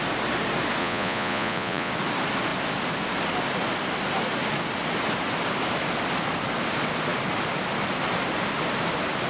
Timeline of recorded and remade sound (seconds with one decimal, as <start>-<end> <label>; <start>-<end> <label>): 0.0-0.8 recorded; 0.8-1.9 remade; 1.9-9.3 recorded